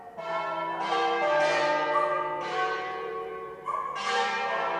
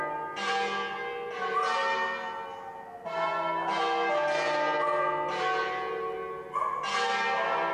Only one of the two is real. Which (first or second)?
second